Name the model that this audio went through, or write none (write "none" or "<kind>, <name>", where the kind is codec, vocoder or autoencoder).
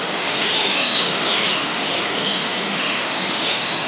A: autoencoder, DAC-VAE